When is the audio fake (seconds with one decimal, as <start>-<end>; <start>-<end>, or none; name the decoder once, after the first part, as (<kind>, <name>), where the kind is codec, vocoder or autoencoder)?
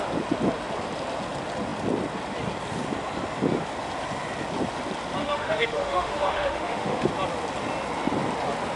5.2-7.1 (autoencoder, DAC-VAE)